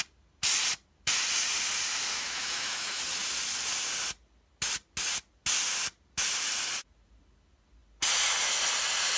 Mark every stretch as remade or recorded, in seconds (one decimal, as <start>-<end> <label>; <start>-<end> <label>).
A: 0.0-2.1 recorded; 2.1-3.0 remade; 3.0-9.2 recorded